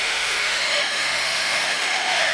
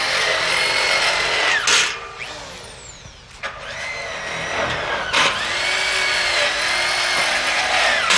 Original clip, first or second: second